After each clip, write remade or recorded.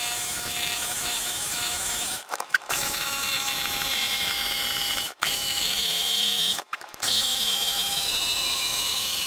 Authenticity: remade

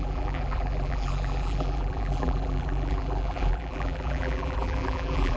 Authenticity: remade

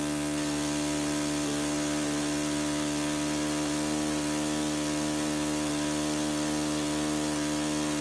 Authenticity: recorded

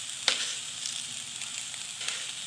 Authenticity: recorded